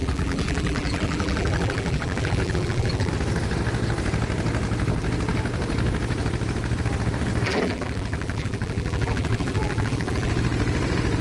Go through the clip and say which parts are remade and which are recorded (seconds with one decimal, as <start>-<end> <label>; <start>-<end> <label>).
0.0-3.1 remade; 3.1-7.5 recorded; 7.5-10.3 remade; 10.3-11.2 recorded